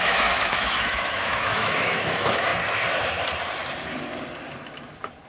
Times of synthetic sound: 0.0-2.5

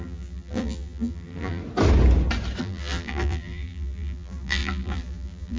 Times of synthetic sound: 0.0-1.6; 2.6-5.6

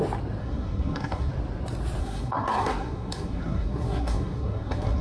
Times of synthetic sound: 0.4-1.3; 2.0-5.0

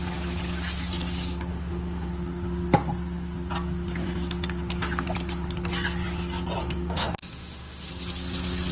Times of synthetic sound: 1.5-2.1; 6.6-7.9

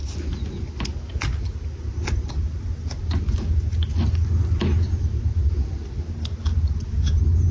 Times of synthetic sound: none